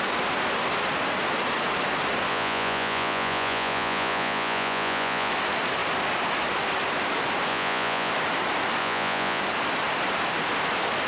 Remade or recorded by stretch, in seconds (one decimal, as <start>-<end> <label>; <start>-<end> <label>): 0.0-2.3 recorded; 2.3-5.3 remade; 5.3-7.5 recorded; 7.5-8.1 remade; 8.1-8.8 recorded; 8.8-9.4 remade; 9.4-11.1 recorded